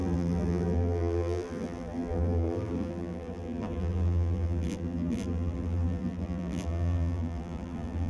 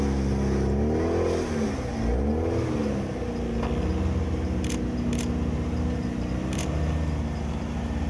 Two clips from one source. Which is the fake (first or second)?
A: first